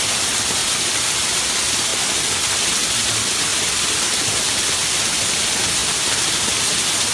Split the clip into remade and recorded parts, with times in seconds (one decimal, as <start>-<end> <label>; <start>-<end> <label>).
0.0-0.6 recorded; 0.6-1.4 remade; 1.4-3.5 recorded; 3.5-5.0 remade; 5.0-5.8 recorded; 5.8-6.6 remade; 6.6-7.1 recorded

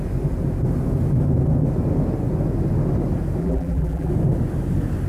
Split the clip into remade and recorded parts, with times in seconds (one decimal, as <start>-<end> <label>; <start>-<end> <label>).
0.0-3.4 recorded; 3.4-4.1 remade; 4.1-5.1 recorded

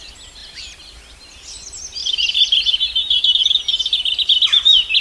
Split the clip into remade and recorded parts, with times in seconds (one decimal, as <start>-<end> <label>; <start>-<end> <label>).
0.0-0.4 recorded; 0.4-1.3 remade; 1.3-2.0 recorded; 2.0-3.0 remade; 3.0-5.0 recorded

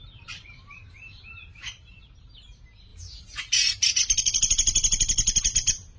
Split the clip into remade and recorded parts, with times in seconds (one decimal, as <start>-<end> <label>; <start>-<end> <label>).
0.0-4.0 remade; 4.0-5.4 recorded; 5.4-6.0 remade

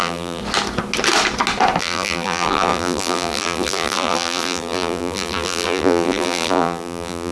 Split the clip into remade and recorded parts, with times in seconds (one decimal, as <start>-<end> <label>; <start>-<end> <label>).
0.0-0.4 remade; 0.4-1.8 recorded; 1.8-7.3 remade

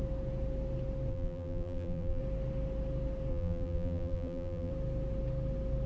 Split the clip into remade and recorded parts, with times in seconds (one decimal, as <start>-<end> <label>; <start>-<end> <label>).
0.0-1.1 recorded; 1.1-2.2 remade; 2.2-3.3 recorded; 3.3-4.7 remade; 4.7-5.9 recorded